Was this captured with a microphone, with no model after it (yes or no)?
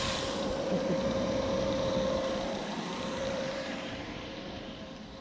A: no